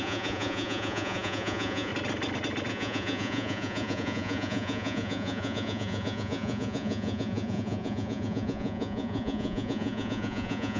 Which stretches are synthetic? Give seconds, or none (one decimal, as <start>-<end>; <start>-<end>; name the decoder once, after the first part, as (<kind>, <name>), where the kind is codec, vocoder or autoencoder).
0.0-1.9 (vocoder, Vocos); 2.7-10.8